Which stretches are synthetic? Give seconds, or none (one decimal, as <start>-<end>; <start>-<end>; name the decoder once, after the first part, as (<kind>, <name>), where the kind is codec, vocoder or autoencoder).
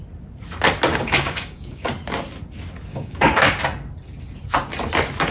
0.9-1.9 (codec, DAC); 2.9-3.6